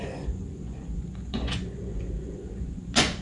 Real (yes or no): no